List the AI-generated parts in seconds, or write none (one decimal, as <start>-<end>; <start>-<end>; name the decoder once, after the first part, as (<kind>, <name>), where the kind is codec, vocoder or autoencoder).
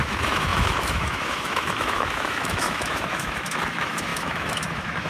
0.0-5.1 (autoencoder, DAC-VAE)